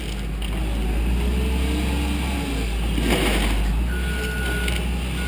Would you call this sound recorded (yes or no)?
yes